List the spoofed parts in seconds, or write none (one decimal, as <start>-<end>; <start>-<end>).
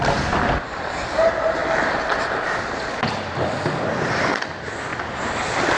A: none